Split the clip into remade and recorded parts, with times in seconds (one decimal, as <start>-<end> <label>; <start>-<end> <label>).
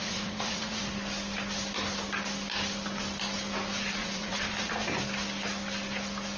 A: 0.0-0.8 remade; 0.8-4.0 recorded; 4.0-5.0 remade; 5.0-6.4 recorded